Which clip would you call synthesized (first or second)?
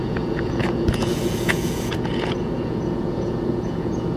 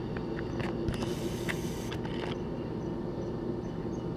first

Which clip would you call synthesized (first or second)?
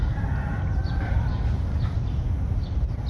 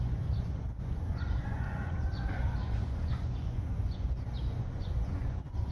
second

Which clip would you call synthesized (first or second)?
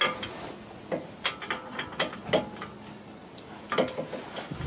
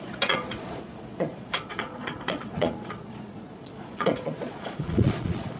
second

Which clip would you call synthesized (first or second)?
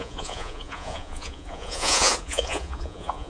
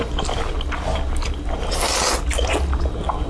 first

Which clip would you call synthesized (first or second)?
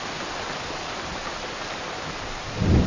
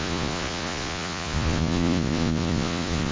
second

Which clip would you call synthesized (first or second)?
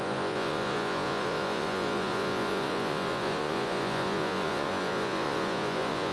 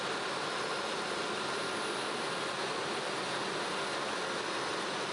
first